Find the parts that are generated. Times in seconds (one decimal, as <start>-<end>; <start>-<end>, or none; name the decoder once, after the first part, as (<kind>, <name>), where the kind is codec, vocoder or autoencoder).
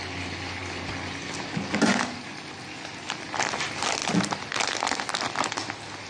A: none